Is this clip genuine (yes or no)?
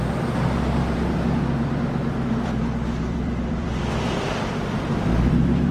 no